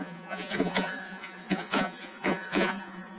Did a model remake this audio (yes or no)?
yes